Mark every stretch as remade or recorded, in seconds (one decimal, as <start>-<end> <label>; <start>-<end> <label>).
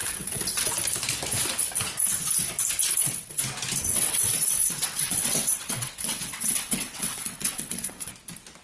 0.0-0.7 remade; 0.7-2.9 recorded; 2.9-3.4 remade; 3.4-3.9 recorded; 3.9-8.1 remade; 8.1-8.6 recorded